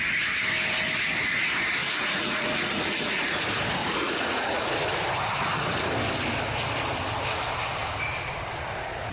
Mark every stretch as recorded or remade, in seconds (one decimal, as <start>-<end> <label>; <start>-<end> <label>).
0.0-1.8 recorded; 1.8-3.4 remade; 3.4-3.8 recorded; 3.8-4.7 remade; 4.7-9.1 recorded